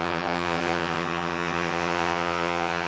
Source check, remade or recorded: remade